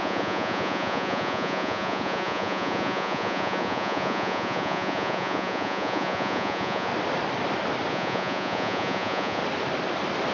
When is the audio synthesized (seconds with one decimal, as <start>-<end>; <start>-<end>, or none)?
0.0-6.9; 7.9-9.4